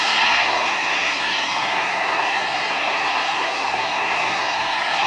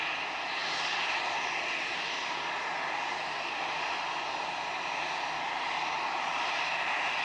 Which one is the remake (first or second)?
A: first